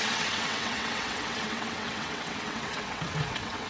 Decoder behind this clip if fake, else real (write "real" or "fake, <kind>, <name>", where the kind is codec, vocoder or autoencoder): fake, vocoder, WaveNeXt